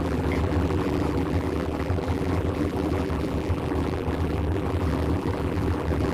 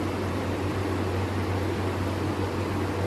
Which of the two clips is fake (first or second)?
first